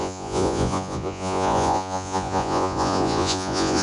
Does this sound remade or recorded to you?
remade